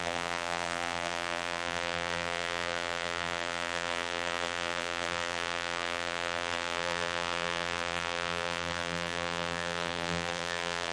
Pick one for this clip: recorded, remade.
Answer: remade